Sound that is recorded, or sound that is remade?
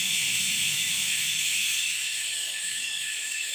remade